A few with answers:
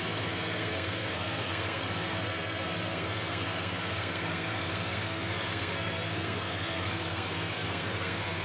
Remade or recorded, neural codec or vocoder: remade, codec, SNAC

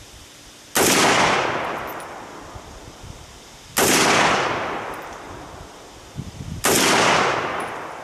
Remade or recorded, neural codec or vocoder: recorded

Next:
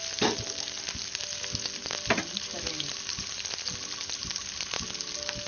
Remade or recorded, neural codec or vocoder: recorded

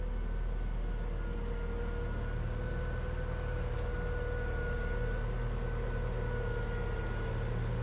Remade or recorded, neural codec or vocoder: recorded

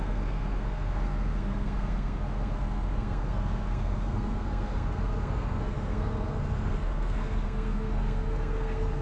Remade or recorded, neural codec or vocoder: remade, codec, SNAC